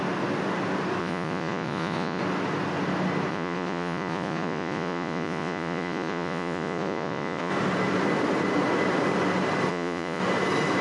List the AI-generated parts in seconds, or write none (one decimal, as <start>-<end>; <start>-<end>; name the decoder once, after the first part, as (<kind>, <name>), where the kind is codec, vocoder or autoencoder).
1.0-2.2 (vocoder, Vocos); 3.3-7.5; 9.7-10.2